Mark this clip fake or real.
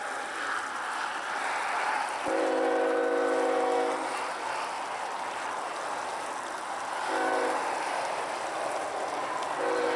real